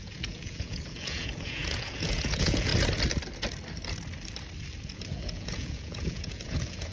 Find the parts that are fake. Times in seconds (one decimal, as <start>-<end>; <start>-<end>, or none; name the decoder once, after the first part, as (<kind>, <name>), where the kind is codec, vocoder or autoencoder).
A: 0.0-2.7 (vocoder, Vocos); 4.8-6.9